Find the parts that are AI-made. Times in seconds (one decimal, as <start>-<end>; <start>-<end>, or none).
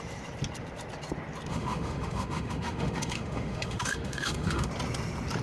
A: 1.5-4.7